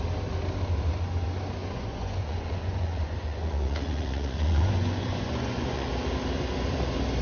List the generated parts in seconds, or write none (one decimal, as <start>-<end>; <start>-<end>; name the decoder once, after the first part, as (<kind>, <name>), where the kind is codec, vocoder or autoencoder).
1.6-5.9 (vocoder, Vocos)